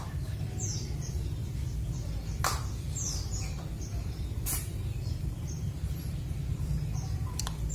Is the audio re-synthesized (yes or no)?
yes